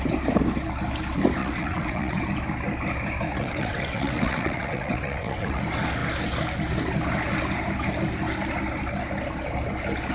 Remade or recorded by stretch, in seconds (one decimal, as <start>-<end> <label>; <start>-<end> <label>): 0.0-1.4 recorded; 1.4-2.2 remade; 2.2-3.3 recorded; 3.3-5.6 remade; 5.6-10.1 recorded